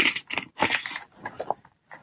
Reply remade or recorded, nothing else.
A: recorded